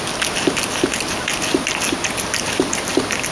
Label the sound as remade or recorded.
recorded